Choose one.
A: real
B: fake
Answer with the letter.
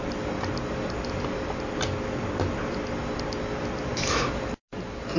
A